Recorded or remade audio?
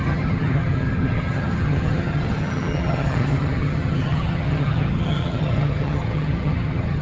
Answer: remade